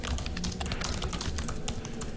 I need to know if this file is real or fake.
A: real